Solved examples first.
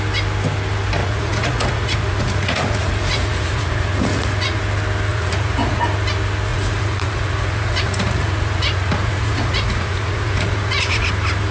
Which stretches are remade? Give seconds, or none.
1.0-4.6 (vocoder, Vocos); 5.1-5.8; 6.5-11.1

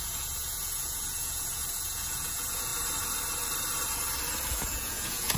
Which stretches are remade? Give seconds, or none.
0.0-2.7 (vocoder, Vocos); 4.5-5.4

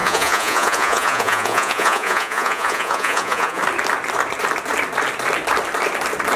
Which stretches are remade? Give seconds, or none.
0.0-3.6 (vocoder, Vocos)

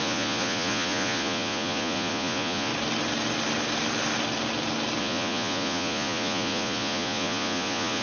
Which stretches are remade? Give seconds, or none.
0.0-2.7 (vocoder, Vocos); 5.0-8.0

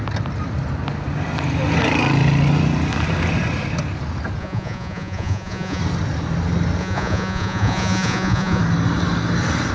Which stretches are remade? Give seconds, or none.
4.4-5.8 (vocoder, Vocos); 6.8-8.6

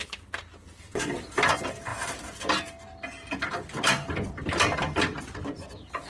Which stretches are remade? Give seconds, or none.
none

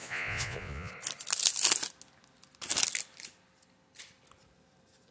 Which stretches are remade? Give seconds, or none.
0.0-0.9 (vocoder, Vocos)